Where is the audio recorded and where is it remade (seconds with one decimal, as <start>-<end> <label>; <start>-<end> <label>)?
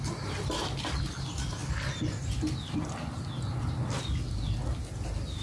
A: 0.0-5.4 recorded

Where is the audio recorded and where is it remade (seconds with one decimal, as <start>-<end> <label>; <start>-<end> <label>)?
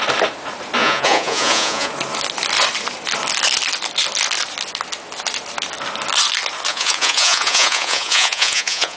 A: 0.0-0.8 recorded; 0.8-1.9 remade; 1.9-6.7 recorded; 6.7-9.0 remade